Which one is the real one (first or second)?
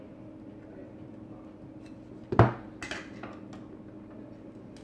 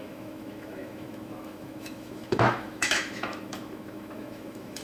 first